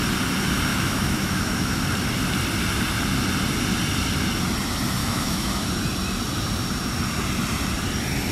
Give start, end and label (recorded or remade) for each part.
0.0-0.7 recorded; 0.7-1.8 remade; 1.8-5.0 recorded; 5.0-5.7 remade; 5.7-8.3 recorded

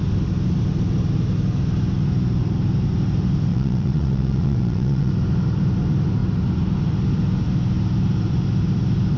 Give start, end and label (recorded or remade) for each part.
0.0-3.5 recorded; 3.5-5.1 remade; 5.1-9.2 recorded

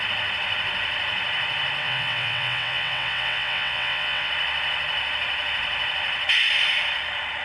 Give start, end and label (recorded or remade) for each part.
0.0-1.8 recorded; 1.8-4.3 remade; 4.3-7.4 recorded